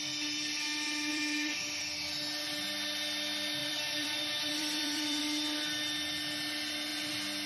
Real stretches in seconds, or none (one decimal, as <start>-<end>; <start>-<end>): 0.0-1.1; 1.8-3.6; 5.2-7.5